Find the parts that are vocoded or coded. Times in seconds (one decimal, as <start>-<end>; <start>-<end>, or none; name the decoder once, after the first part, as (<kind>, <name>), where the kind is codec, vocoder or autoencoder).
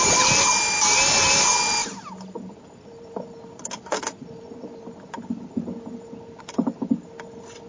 none